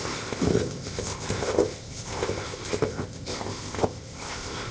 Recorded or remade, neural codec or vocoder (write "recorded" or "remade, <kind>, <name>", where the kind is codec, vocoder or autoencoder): remade, codec, ZipCodec